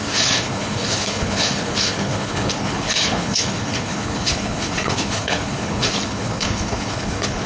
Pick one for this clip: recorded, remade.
remade